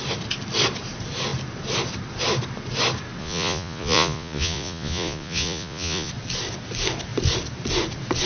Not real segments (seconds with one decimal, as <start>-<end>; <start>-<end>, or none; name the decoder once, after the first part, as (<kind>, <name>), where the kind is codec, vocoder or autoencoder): 3.2-6.1 (vocoder, Vocos)